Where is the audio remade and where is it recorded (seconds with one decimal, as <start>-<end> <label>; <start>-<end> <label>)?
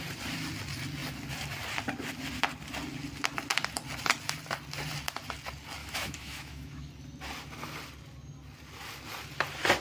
0.0-5.8 recorded; 5.8-6.9 remade; 6.9-9.8 recorded